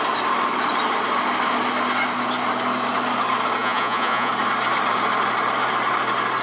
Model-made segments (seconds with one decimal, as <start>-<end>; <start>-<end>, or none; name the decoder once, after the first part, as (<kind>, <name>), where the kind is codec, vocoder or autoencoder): 3.6-4.3 (vocoder, Vocos)